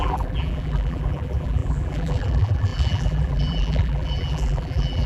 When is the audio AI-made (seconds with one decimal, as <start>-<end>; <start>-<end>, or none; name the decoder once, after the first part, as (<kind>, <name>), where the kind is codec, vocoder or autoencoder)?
0.0-5.1 (vocoder, BigVGAN v2)